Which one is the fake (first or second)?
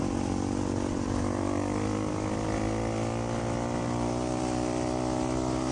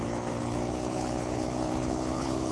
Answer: second